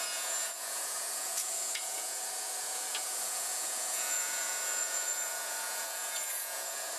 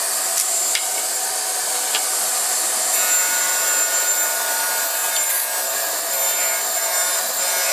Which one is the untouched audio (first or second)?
second